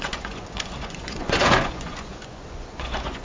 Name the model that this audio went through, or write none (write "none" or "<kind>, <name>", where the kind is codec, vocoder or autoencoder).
vocoder, Vocos